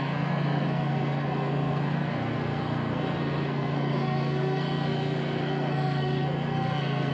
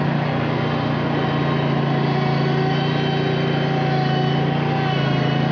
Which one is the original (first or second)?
second